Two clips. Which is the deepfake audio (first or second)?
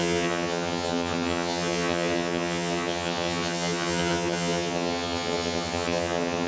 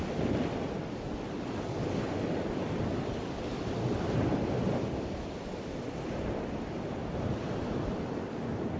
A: first